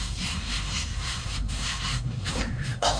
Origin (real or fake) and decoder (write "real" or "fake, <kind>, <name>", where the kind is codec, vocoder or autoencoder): fake, codec, SNAC